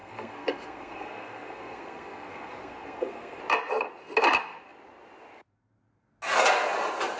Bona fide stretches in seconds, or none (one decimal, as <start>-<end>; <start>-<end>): 3.4-7.2